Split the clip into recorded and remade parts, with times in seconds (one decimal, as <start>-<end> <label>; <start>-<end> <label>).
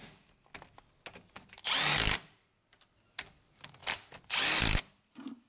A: 0.0-5.5 recorded